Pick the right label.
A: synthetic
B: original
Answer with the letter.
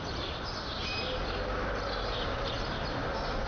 B